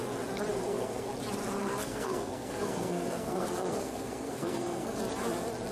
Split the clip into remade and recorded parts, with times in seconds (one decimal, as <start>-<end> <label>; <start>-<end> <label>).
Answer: 0.0-0.5 recorded; 0.5-1.1 remade; 1.1-1.6 recorded; 1.6-5.0 remade; 5.0-5.7 recorded